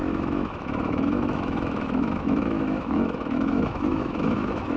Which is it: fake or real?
fake